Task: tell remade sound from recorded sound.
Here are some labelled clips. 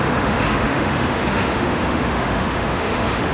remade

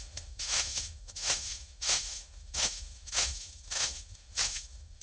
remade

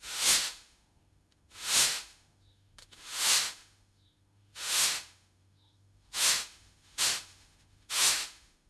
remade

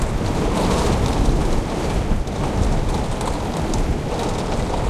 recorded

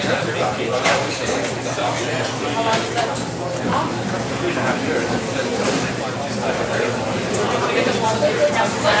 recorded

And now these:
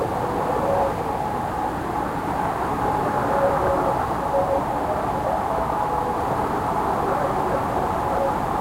recorded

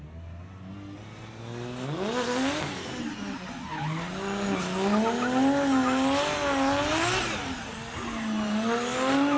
recorded